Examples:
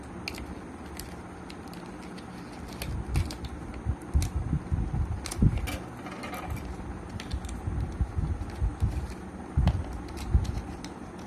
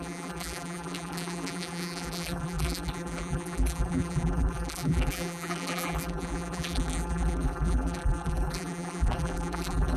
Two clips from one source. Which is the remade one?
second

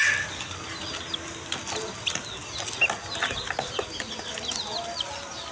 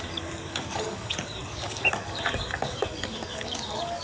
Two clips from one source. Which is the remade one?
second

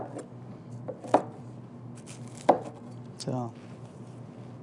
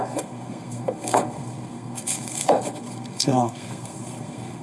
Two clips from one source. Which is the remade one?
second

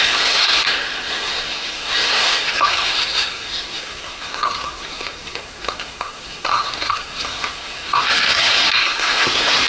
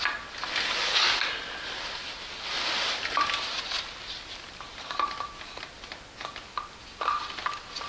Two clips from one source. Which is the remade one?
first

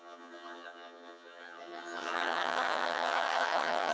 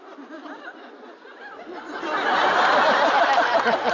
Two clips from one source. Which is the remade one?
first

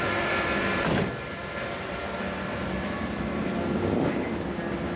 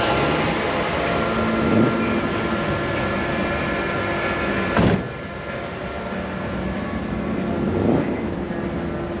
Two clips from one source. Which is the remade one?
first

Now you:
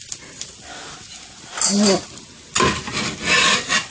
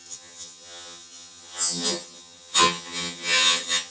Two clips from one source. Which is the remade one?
second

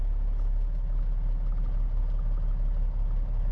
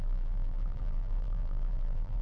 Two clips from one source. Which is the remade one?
second